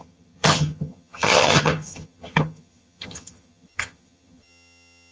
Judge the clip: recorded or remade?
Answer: remade